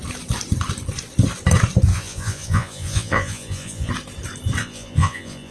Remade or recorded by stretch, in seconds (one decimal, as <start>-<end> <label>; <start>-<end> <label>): 0.0-1.9 recorded; 1.9-3.9 remade; 3.9-4.6 recorded; 4.6-5.5 remade